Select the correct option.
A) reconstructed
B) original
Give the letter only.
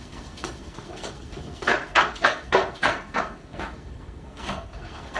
A